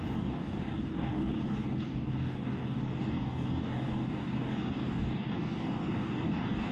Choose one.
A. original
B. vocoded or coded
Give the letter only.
B